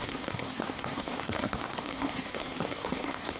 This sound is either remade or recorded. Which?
remade